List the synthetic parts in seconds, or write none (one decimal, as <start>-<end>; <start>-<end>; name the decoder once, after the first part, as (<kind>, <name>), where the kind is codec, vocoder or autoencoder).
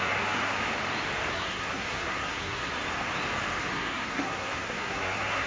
0.0-0.6 (codec, SNAC); 1.3-2.8; 3.7-5.5